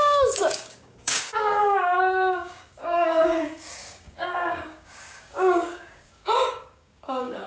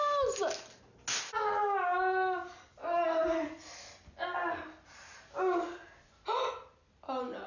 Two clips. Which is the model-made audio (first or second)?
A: first